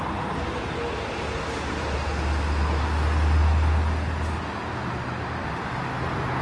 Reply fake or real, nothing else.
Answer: real